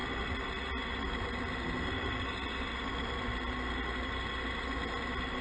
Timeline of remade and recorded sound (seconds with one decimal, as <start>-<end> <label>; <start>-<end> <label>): 0.0-5.4 recorded

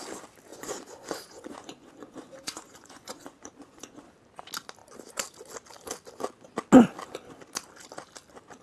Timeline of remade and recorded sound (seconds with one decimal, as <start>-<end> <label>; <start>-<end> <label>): 0.0-0.5 recorded; 0.5-4.1 remade; 4.1-8.6 recorded